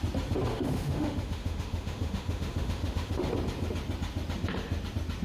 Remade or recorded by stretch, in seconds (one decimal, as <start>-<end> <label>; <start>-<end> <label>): 0.0-0.5 recorded; 0.5-3.3 remade; 3.3-5.2 recorded